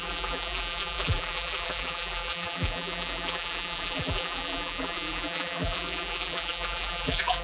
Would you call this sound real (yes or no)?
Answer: no